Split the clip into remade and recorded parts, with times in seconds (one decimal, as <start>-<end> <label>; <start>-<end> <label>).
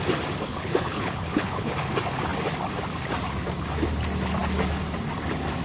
0.0-0.5 recorded; 0.5-1.9 remade; 1.9-5.6 recorded